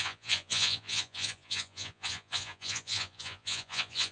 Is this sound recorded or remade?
remade